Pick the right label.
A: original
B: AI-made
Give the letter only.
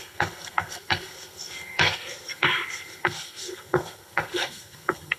B